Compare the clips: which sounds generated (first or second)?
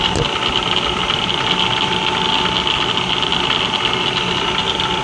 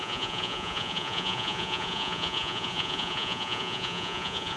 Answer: second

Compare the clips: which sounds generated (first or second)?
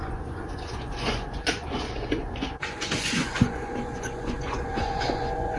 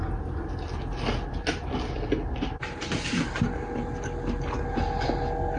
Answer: first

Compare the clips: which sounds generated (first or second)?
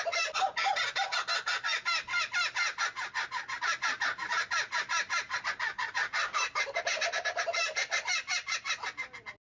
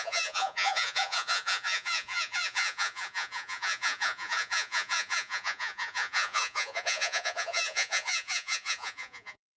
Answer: second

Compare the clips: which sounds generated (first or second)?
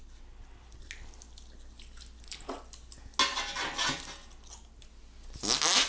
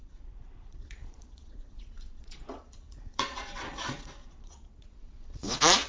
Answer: second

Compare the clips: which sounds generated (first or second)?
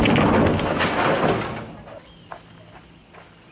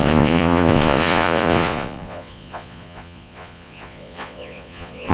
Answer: second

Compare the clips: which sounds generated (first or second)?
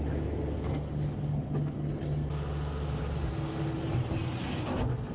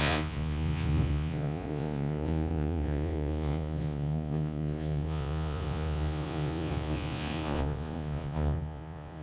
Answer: second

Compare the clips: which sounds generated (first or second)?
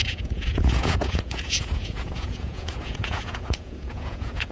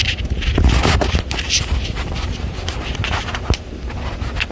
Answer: first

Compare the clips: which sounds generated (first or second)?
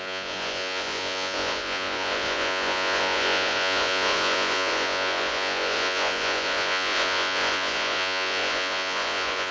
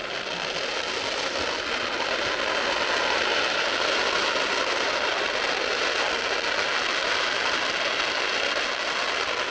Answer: first